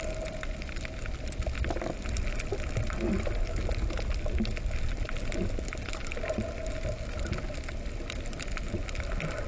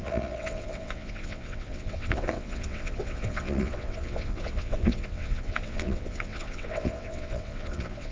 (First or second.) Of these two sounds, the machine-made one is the second